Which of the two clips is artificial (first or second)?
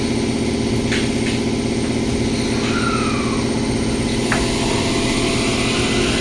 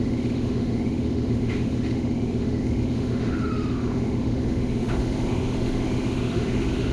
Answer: second